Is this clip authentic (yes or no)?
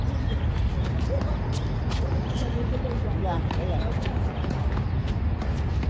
yes